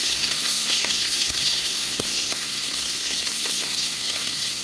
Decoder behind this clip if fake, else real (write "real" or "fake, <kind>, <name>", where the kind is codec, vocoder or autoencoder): fake, codec, SNAC